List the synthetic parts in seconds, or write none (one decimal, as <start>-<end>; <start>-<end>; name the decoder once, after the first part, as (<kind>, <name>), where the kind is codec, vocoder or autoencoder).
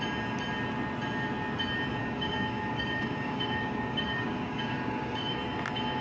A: 2.0-5.4 (codec, DAC)